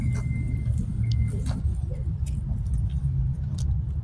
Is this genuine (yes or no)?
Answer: yes